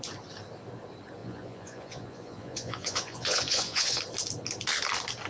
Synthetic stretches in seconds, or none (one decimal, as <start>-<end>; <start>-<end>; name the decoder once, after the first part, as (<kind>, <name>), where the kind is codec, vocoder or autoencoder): 1.2-4.0 (vocoder, Vocos)